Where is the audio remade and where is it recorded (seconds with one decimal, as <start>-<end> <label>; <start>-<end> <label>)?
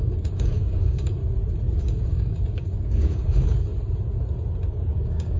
0.0-1.2 remade; 1.2-1.8 recorded; 1.8-3.7 remade; 3.7-4.7 recorded; 4.7-5.4 remade